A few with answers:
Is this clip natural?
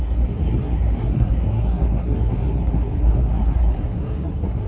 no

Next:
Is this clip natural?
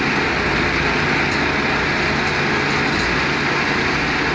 yes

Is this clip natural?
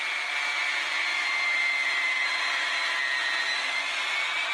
yes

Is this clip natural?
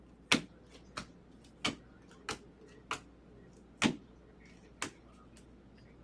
yes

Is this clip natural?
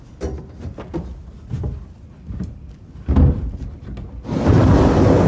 yes